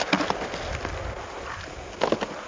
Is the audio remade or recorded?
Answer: recorded